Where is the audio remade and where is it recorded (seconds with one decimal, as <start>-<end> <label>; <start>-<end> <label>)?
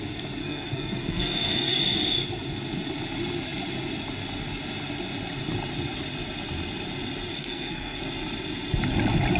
0.0-0.4 recorded; 0.4-1.8 remade; 1.8-7.3 recorded; 7.3-8.0 remade; 8.0-9.4 recorded